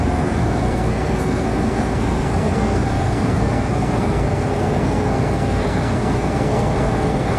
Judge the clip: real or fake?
fake